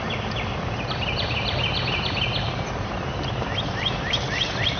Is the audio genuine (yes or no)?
yes